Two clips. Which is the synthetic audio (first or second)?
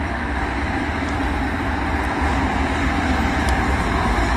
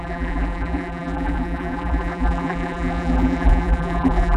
second